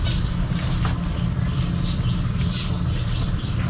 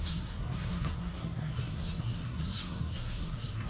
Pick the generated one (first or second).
second